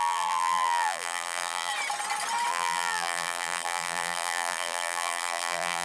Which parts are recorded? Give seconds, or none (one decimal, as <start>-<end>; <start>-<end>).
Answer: 1.7-2.5